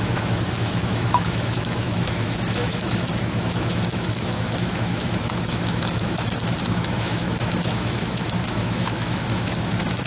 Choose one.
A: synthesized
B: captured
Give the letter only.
A